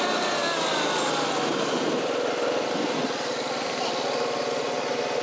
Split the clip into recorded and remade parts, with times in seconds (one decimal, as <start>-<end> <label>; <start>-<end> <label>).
0.0-5.2 recorded